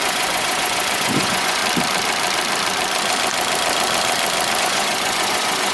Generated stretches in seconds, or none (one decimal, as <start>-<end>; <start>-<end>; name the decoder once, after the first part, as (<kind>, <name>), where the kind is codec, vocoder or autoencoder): 0.0-1.6 (vocoder, Vocos); 4.6-5.7